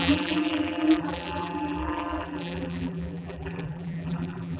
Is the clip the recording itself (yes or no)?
no